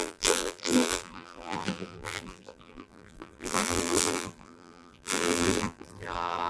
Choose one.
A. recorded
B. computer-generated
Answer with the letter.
B